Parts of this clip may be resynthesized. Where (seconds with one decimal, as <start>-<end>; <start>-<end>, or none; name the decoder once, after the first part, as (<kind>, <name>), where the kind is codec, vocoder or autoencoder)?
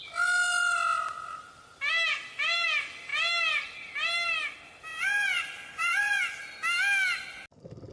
4.9-6.2 (vocoder, Vocos)